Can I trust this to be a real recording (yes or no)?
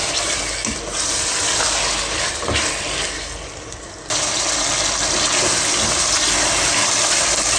yes